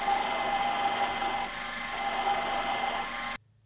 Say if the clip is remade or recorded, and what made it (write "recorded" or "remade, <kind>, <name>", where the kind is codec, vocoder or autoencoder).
recorded